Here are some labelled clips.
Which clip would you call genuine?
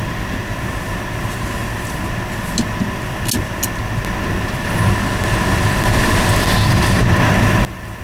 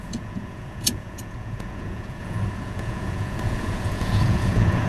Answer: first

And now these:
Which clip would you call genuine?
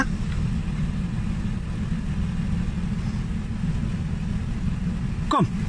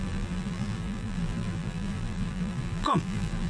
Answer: first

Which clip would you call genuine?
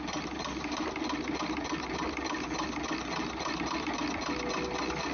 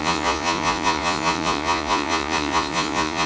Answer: first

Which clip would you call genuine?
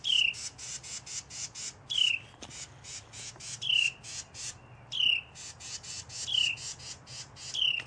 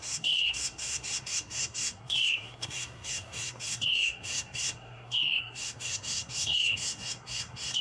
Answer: first